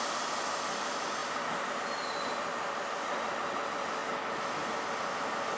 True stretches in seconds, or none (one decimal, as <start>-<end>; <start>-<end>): 0.0-5.6

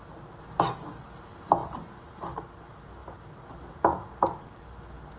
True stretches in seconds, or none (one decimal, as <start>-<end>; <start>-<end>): 0.0-5.2